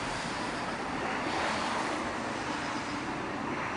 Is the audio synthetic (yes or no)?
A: no